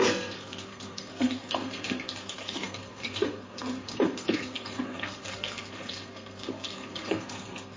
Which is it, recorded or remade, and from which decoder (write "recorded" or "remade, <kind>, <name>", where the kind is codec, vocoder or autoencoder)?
remade, codec, SNAC